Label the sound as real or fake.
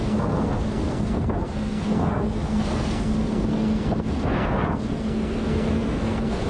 fake